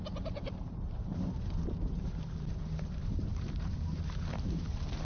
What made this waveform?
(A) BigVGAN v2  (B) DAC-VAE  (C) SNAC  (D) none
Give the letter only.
A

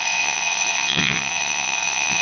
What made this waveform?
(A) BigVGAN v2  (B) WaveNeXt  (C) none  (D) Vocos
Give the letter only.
B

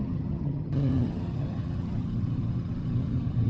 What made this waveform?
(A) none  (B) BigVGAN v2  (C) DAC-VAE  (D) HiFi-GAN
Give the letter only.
D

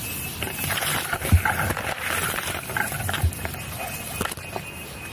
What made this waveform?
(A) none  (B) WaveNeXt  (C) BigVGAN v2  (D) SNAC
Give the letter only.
A